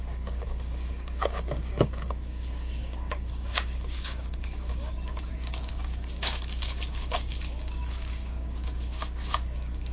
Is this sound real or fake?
fake